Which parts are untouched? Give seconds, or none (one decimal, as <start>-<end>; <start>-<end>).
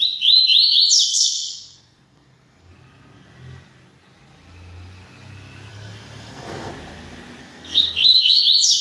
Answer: 0.0-1.1; 2.7-5.7; 6.7-7.4; 8.4-8.8